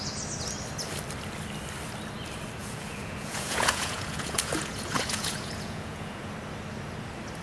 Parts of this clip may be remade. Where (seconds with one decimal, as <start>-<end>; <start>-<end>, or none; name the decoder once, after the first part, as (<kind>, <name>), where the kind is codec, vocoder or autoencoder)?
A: 2.6-6.3 (vocoder, Vocos)